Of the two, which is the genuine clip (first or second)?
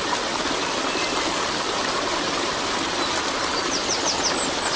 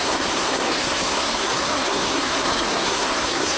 first